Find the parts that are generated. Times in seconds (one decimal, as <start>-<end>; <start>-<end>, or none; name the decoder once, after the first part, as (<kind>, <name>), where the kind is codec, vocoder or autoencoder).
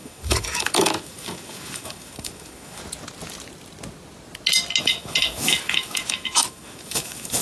0.0-2.8 (autoencoder, DAC-VAE); 4.8-7.4